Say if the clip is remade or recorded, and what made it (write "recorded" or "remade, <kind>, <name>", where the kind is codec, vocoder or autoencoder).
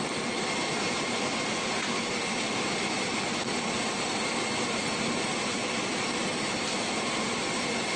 recorded